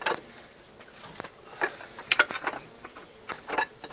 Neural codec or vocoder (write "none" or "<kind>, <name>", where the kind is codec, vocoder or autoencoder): none